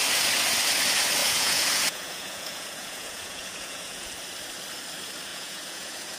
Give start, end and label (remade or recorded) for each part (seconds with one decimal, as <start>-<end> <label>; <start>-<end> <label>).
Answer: 0.0-1.2 recorded; 1.2-4.1 remade; 4.1-5.3 recorded; 5.3-6.2 remade